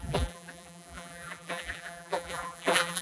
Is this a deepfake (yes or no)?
yes